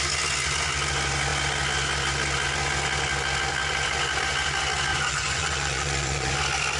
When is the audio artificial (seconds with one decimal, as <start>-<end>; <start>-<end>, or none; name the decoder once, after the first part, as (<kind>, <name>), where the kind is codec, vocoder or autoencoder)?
4.9-6.3 (vocoder, Vocos)